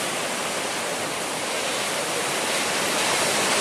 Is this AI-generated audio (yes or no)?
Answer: no